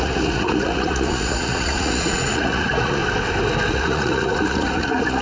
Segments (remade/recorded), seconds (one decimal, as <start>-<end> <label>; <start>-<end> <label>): 0.0-3.0 remade; 3.0-3.7 recorded; 3.7-5.2 remade